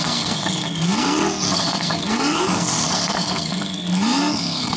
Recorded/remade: remade